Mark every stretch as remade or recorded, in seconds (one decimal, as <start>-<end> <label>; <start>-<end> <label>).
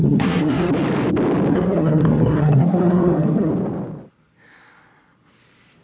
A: 0.0-0.7 remade; 0.7-1.5 recorded; 1.5-3.5 remade; 3.5-5.8 recorded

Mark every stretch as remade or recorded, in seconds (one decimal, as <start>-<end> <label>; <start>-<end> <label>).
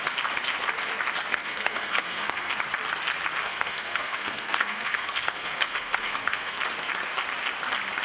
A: 0.0-1.3 recorded; 1.3-2.5 remade; 2.5-3.4 recorded; 3.4-6.6 remade; 6.6-8.0 recorded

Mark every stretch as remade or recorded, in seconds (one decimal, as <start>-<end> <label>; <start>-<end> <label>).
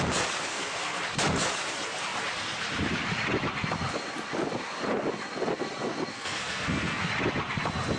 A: 0.0-0.5 recorded; 0.5-1.0 remade; 1.0-6.1 recorded; 6.1-7.1 remade; 7.1-8.0 recorded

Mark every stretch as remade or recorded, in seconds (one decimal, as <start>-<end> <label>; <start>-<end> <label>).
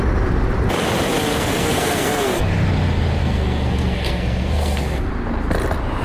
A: 0.0-1.3 recorded; 1.3-2.5 remade; 2.5-3.2 recorded; 3.2-5.1 remade; 5.1-6.0 recorded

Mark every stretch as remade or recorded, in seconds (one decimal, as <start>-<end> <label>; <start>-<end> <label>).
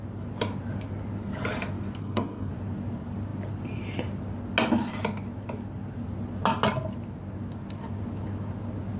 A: 0.0-2.0 recorded; 2.0-2.5 remade; 2.5-9.0 recorded